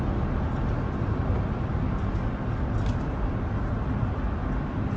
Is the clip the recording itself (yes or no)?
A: yes